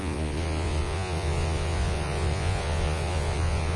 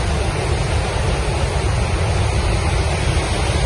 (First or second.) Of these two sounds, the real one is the second